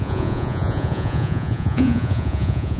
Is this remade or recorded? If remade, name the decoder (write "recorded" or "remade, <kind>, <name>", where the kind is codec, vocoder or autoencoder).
remade, vocoder, Vocos